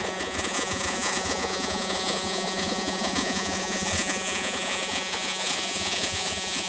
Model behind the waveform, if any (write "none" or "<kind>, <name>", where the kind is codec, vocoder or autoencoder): vocoder, Vocos